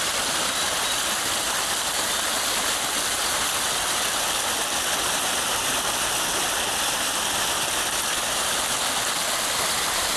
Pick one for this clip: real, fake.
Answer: real